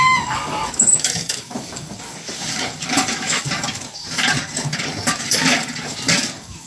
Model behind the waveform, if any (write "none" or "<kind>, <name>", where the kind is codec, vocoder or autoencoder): codec, DAC